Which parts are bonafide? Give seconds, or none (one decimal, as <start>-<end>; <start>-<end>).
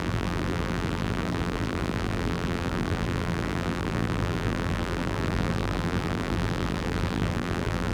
none